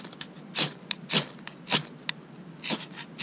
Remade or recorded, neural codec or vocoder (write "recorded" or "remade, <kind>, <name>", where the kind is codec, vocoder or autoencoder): recorded